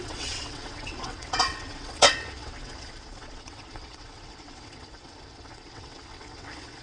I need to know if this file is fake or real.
fake